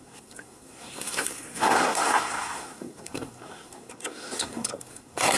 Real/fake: fake